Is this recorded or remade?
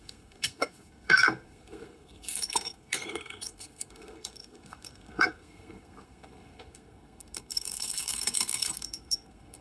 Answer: remade